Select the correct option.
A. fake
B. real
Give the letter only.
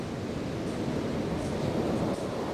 B